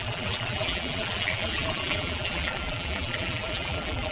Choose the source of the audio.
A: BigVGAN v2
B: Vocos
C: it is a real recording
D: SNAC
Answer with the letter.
A